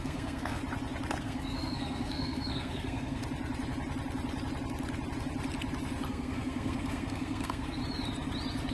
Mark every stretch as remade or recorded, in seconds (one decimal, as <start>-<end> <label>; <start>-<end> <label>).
0.0-0.6 remade; 0.6-1.2 recorded; 1.2-3.2 remade; 3.2-6.1 recorded; 6.1-7.8 remade; 7.8-8.7 recorded